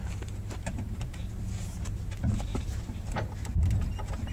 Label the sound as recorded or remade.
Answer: remade